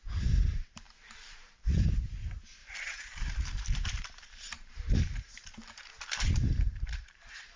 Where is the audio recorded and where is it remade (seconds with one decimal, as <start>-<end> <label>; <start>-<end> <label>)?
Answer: 0.0-0.4 recorded; 0.4-1.9 remade; 1.9-2.6 recorded; 2.6-7.6 remade